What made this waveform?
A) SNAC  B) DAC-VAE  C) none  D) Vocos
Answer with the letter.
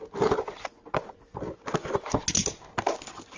C